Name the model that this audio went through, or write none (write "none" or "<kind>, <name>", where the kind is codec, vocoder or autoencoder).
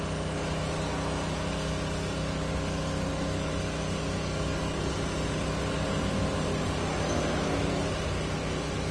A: none